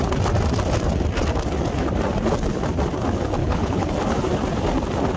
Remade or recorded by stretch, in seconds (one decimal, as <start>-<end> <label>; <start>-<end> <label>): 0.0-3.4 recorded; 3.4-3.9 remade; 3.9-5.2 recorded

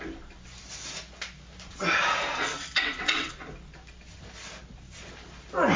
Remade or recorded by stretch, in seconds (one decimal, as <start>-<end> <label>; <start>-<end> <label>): 0.0-2.5 recorded; 2.5-3.3 remade; 3.3-5.8 recorded

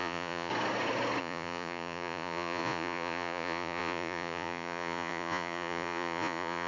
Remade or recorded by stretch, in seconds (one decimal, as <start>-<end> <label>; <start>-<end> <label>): 0.0-0.5 remade; 0.5-1.2 recorded; 1.2-6.7 remade

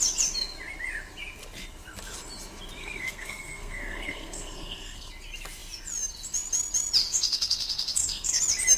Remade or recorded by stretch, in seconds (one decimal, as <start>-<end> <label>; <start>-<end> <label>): 0.0-2.8 recorded; 2.8-5.1 remade; 5.1-7.0 recorded; 7.0-8.4 remade; 8.4-8.8 recorded